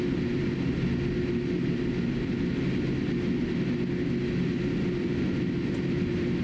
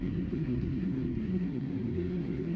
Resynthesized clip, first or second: second